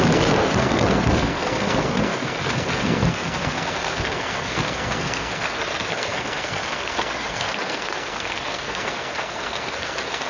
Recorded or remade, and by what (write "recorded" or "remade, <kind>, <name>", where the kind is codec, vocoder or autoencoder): remade, codec, SNAC